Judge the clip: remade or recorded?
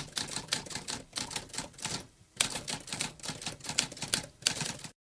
remade